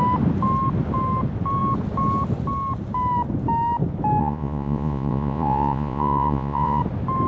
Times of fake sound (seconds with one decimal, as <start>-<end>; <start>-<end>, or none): 4.2-6.8